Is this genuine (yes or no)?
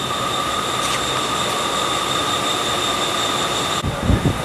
yes